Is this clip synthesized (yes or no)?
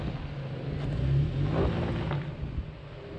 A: no